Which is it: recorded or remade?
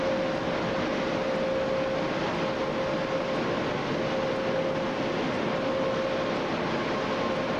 recorded